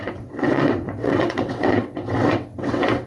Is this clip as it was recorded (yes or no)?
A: no